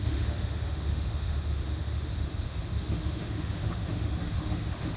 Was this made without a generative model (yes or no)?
no